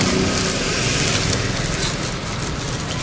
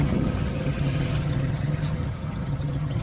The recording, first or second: first